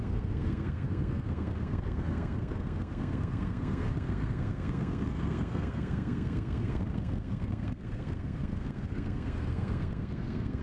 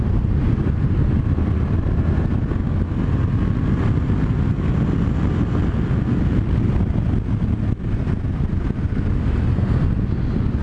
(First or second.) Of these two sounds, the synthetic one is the first